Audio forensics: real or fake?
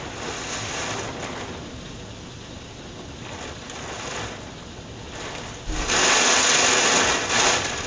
real